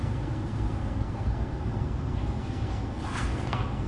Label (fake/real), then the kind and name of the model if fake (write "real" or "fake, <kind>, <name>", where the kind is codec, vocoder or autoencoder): fake, codec, SNAC